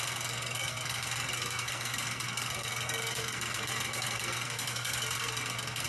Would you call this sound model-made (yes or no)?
yes